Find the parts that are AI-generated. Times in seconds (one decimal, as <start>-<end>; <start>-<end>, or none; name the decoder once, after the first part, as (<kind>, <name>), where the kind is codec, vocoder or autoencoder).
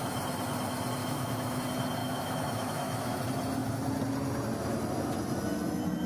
1.0-1.6 (autoencoder, DAC-VAE); 2.0-3.2